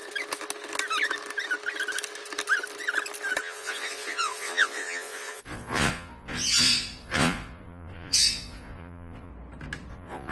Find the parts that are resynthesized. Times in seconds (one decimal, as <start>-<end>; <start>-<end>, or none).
3.4-9.3; 9.9-10.3